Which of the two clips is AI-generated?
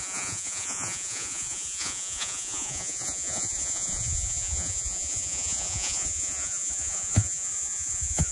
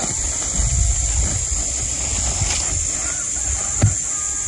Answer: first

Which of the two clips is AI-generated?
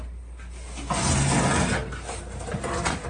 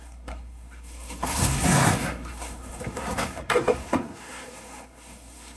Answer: second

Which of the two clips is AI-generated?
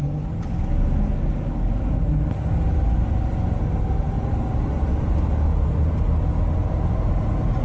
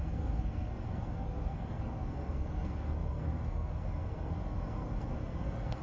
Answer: second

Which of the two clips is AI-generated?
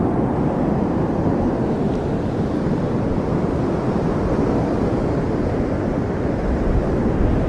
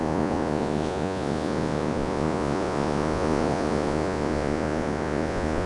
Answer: second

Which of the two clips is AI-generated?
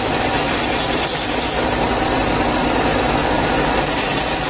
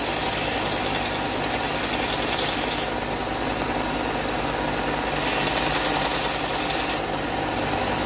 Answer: first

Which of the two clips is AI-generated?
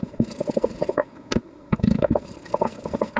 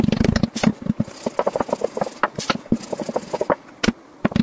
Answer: first